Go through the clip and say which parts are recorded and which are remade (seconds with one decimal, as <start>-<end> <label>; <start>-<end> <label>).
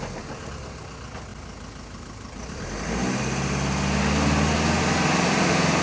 0.0-5.8 recorded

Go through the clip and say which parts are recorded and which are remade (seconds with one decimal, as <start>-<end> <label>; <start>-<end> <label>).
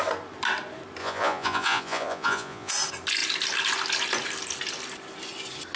0.0-1.0 recorded; 1.0-2.7 remade; 2.7-5.8 recorded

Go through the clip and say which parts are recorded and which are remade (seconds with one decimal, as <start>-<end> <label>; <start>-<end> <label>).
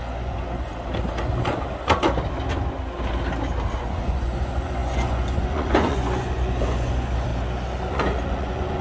0.0-0.7 remade; 0.7-3.8 recorded; 3.8-7.3 remade; 7.3-7.9 recorded; 7.9-8.8 remade